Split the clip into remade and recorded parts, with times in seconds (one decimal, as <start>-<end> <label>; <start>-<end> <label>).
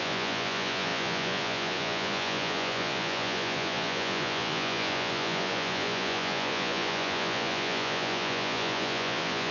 0.0-9.5 remade